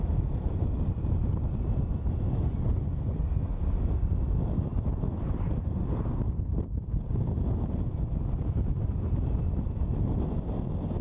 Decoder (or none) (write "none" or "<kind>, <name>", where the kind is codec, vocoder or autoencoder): none